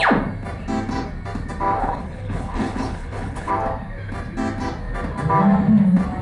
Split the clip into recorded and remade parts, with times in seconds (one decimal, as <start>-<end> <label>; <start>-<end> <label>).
0.0-1.8 recorded; 1.8-3.5 remade; 3.5-6.2 recorded